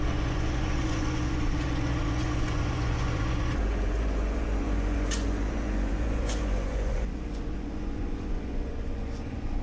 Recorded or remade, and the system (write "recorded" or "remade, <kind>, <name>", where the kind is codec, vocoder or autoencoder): remade, vocoder, Vocos